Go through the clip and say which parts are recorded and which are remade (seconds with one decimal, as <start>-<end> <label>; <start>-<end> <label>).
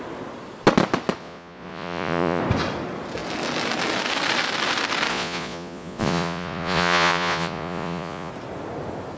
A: 0.0-1.2 recorded; 1.2-2.4 remade; 2.4-5.1 recorded; 5.1-8.3 remade; 8.3-9.2 recorded